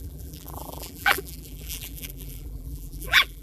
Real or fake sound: fake